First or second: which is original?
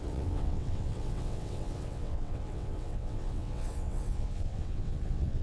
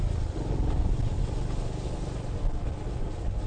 second